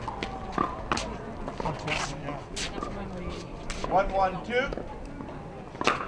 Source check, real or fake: real